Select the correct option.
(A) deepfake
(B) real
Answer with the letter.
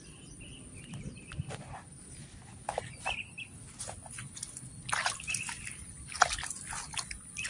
B